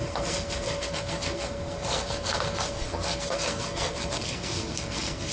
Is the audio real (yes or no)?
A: no